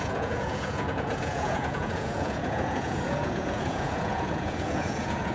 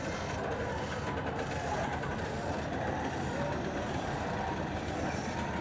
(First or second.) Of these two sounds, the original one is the second